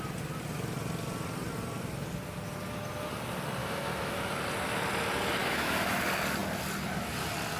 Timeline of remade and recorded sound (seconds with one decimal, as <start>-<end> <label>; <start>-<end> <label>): 0.0-3.6 recorded; 3.6-4.2 remade; 4.2-5.4 recorded; 5.4-6.0 remade; 6.0-7.6 recorded